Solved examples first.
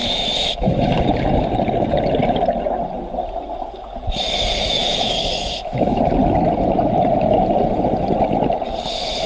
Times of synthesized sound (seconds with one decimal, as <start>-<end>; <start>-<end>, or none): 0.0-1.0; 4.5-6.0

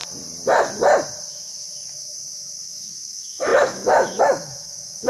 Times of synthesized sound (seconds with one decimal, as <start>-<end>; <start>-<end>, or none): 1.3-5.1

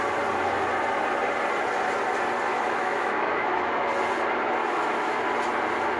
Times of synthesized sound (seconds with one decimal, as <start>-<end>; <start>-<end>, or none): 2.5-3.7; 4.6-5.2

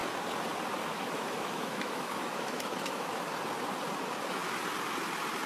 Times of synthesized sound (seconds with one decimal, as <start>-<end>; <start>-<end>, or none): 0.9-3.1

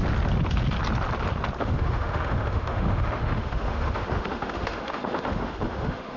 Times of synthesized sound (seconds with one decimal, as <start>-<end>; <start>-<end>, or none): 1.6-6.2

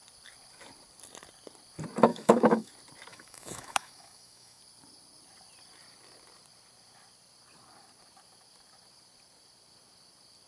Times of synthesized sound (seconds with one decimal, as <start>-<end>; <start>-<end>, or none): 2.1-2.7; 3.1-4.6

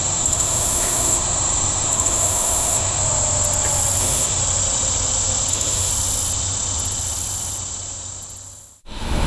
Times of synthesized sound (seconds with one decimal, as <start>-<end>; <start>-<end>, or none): 0.0-3.0; 4.0-4.4; 5.5-5.9; 8.8-9.3